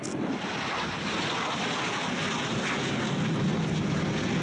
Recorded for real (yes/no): yes